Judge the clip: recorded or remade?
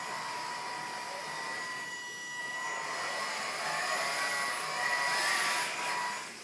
recorded